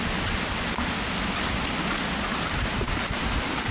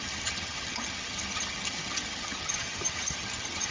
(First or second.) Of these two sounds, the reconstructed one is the second